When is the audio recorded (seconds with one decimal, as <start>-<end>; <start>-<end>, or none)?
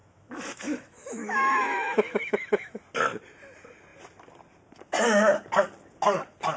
2.8-6.6